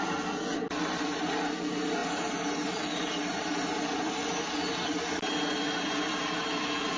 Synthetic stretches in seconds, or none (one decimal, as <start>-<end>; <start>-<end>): none